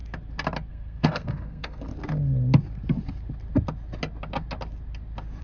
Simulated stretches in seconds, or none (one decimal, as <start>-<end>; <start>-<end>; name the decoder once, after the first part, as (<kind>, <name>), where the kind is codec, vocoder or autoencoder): 0.7-1.9 (codec, SNAC)